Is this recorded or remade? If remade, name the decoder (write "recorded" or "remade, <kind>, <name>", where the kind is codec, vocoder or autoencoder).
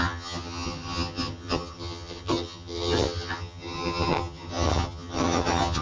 remade, vocoder, HiFi-GAN